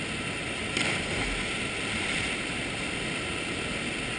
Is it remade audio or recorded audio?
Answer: recorded